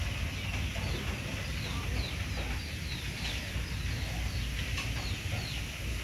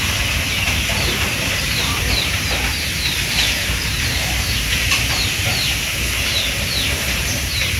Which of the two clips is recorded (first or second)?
first